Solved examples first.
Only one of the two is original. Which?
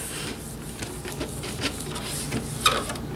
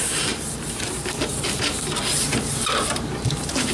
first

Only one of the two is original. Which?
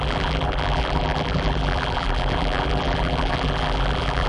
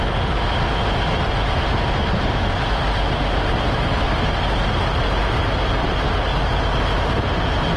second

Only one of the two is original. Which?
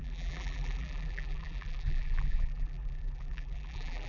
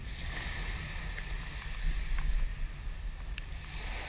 second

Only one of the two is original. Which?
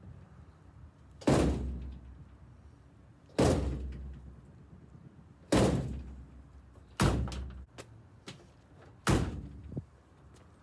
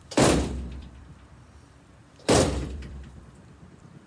first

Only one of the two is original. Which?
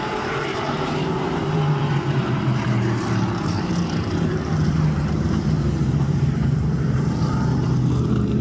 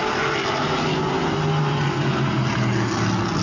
second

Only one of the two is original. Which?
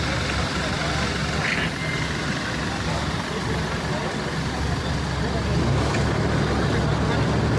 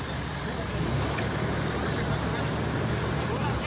first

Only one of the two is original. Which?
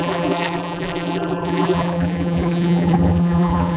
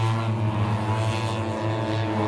second